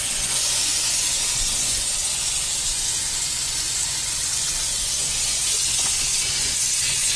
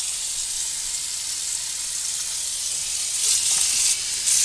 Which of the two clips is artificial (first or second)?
first